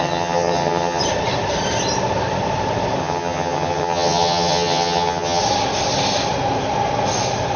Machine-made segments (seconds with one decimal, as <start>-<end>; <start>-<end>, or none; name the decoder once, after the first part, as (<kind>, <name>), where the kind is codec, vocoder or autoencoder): 0.0-1.0 (vocoder, HiFi-GAN); 3.0-5.4